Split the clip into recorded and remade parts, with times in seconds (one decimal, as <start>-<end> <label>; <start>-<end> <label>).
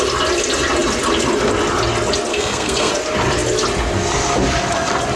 0.0-2.3 recorded; 2.3-2.9 remade; 2.9-5.2 recorded